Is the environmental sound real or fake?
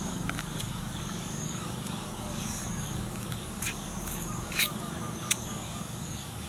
fake